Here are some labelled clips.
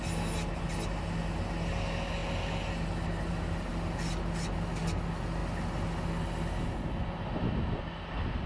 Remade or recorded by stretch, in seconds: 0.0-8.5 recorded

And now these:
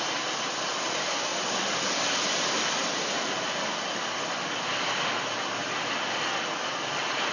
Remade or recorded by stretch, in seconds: 0.0-7.3 recorded

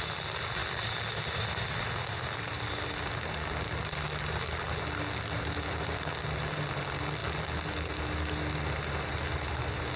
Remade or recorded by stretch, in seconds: 0.0-10.0 recorded

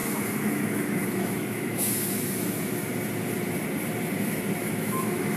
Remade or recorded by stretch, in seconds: 0.0-2.7 remade; 2.7-4.6 recorded; 4.6-5.4 remade